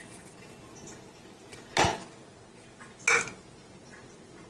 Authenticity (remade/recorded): recorded